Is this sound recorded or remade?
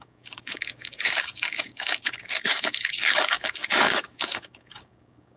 remade